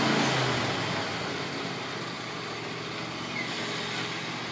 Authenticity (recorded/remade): recorded